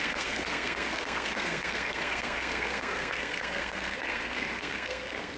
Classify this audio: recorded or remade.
remade